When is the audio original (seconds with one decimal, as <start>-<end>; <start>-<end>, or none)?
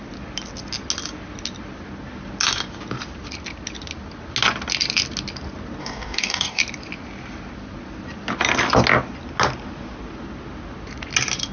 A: 0.0-5.8; 6.6-11.5